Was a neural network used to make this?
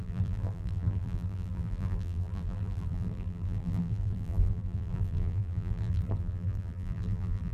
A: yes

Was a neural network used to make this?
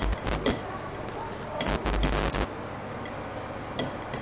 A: no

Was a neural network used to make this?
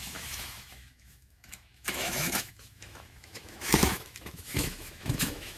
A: yes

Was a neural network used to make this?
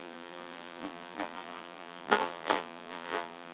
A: yes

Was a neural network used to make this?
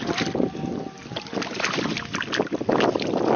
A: no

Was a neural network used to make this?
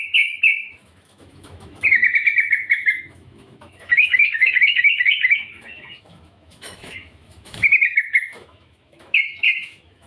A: yes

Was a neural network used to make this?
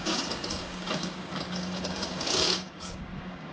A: yes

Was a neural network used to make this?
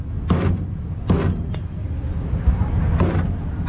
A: no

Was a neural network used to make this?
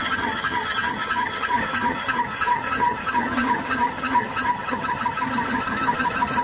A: yes